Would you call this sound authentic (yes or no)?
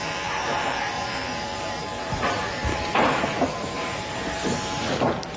no